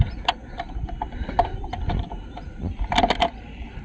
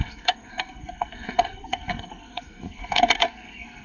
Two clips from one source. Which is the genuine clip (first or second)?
first